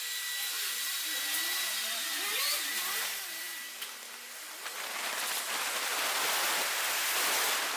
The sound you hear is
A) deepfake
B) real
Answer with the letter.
B